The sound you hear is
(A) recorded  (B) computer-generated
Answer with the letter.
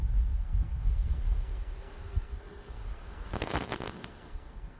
B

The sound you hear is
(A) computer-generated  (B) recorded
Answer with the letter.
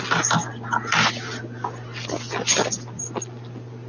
B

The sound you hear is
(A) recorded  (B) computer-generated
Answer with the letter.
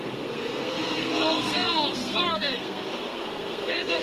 B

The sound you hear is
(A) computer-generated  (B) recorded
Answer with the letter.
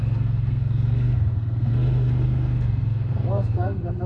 A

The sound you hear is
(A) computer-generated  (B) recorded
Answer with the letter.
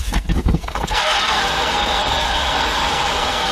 A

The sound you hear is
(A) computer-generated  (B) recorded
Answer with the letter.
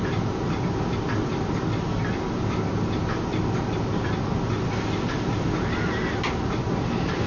B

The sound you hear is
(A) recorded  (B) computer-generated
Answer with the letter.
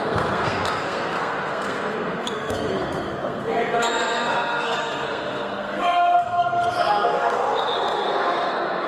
B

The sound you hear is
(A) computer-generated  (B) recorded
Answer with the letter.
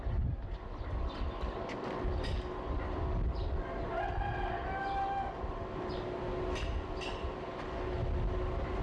B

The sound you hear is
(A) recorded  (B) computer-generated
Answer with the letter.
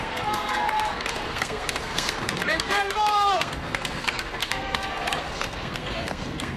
B